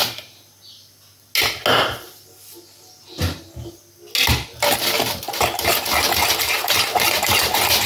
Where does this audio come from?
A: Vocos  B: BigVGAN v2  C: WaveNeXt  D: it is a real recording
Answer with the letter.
D